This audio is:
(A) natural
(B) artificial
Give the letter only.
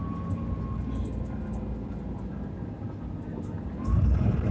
A